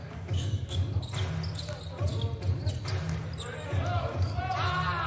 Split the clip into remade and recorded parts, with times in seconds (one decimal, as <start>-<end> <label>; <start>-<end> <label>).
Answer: 0.0-1.0 remade; 1.0-3.6 recorded; 3.6-4.4 remade; 4.4-5.1 recorded